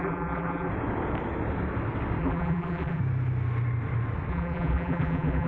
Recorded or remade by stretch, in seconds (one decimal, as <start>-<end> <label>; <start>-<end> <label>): 0.0-0.7 remade; 0.7-2.2 recorded; 2.2-3.0 remade; 3.0-4.3 recorded; 4.3-5.5 remade